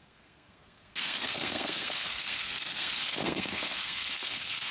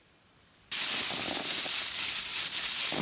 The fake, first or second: first